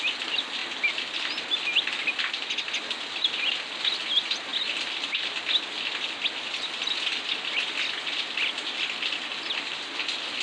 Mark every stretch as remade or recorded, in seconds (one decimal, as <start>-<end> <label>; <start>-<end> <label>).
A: 0.0-10.4 recorded